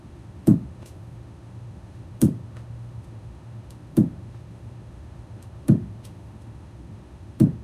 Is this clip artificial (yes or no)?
yes